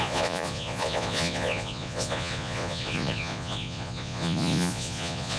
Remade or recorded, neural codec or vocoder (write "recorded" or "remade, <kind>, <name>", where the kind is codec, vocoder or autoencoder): remade, vocoder, Vocos